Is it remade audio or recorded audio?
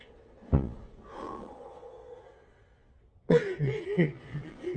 remade